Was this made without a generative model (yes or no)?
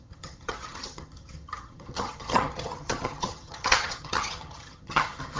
no